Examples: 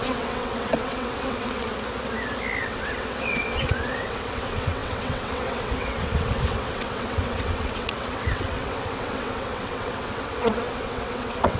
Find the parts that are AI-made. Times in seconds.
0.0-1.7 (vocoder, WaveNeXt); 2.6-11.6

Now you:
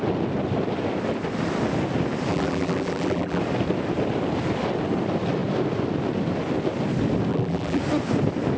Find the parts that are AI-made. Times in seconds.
2.3-3.4 (vocoder, BigVGAN v2); 7.3-7.8

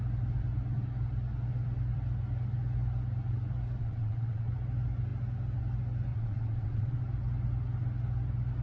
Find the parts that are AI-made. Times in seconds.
3.8-4.5 (vocoder, WaveNeXt); 6.1-7.0

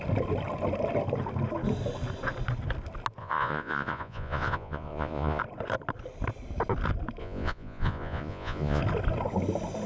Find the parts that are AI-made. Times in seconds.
3.2-5.4 (vocoder, Vocos); 7.2-8.8

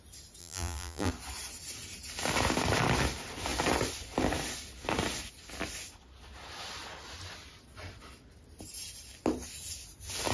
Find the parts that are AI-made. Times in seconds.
0.4-1.1 (vocoder, BigVGAN v2)